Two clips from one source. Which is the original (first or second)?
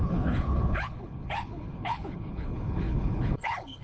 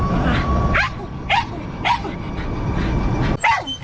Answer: second